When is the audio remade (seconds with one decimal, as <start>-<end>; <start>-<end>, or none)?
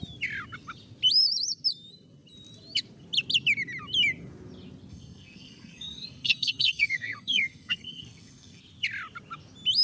4.9-8.6